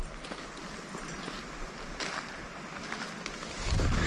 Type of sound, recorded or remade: recorded